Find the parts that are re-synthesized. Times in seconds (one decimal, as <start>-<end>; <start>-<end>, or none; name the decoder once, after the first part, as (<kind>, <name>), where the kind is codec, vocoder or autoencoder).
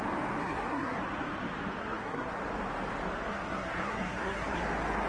0.4-1.0 (codec, SNAC); 1.8-2.4; 3.3-4.6